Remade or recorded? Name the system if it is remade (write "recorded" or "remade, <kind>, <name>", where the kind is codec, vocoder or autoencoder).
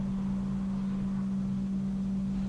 recorded